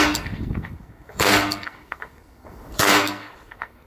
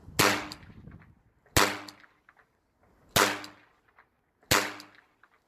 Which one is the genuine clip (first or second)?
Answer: second